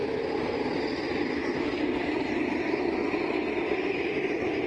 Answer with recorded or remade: remade